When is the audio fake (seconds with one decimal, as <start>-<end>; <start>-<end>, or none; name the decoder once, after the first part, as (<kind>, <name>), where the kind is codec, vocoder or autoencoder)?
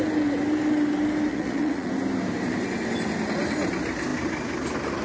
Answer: 1.3-1.9 (vocoder, Vocos)